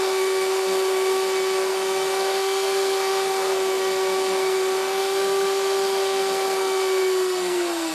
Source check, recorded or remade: remade